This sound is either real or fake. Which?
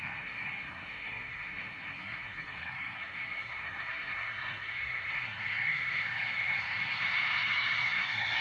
fake